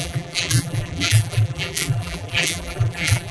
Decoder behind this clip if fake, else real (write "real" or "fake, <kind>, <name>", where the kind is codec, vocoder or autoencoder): fake, vocoder, BigVGAN v2